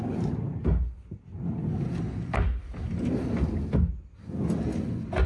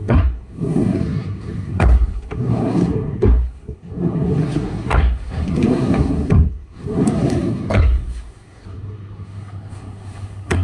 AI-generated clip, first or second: second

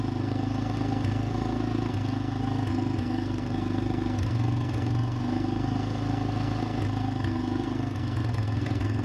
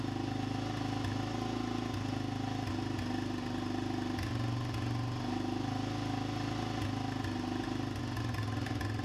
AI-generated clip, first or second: first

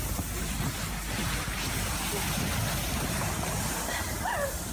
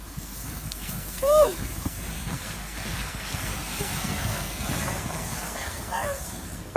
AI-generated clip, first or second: second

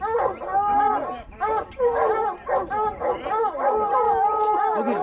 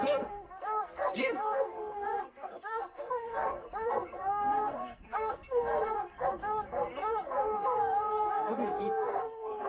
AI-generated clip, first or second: second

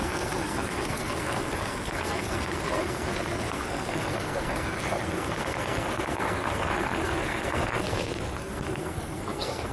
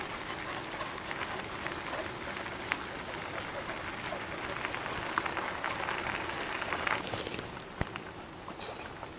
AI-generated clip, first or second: first